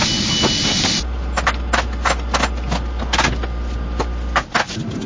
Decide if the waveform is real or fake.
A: real